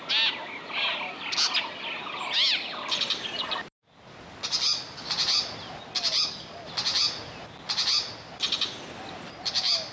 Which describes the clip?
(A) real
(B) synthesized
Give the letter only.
A